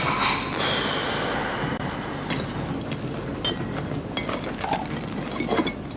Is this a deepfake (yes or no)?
no